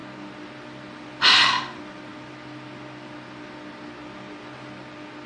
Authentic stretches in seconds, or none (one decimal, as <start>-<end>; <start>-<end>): 0.0-5.3